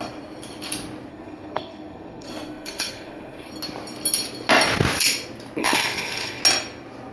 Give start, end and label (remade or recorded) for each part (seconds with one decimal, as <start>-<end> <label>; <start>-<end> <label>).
0.0-1.1 recorded; 1.1-3.5 remade; 3.5-5.6 recorded; 5.6-6.4 remade; 6.4-7.1 recorded